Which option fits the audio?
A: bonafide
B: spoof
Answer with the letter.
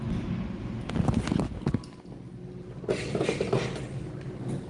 A